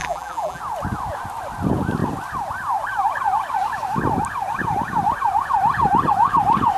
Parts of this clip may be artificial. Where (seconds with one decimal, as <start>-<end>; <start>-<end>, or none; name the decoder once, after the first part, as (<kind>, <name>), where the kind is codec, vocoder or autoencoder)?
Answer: 0.0-0.6 (vocoder, BigVGAN v2)